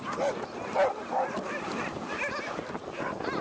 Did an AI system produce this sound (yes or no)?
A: no